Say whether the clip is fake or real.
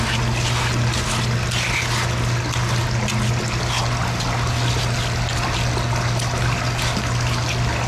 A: real